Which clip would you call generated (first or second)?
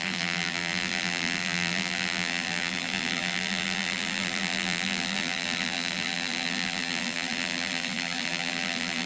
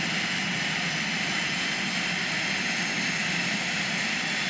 first